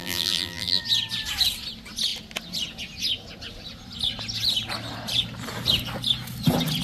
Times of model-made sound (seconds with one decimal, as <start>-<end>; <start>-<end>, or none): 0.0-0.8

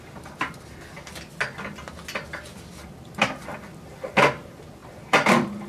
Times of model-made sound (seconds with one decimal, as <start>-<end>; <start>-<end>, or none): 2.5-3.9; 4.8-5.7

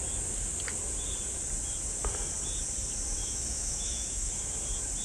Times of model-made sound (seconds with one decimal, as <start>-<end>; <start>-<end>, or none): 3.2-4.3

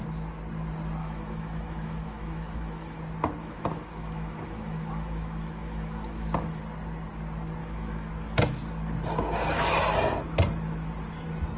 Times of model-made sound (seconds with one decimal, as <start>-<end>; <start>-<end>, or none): 1.0-3.0; 3.4-6.6; 7.6-8.1

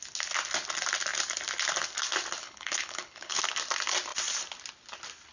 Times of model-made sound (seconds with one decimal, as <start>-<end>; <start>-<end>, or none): 2.4-3.4